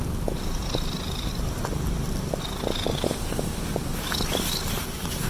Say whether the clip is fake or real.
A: real